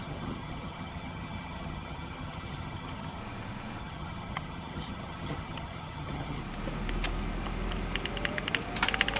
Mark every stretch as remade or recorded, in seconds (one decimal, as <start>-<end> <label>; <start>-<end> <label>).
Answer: 0.0-3.2 remade; 3.2-3.8 recorded; 3.8-6.4 remade; 6.4-9.2 recorded